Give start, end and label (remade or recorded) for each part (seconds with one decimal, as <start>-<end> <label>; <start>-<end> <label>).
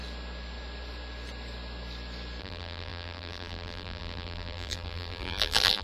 0.0-2.4 recorded; 2.4-5.8 remade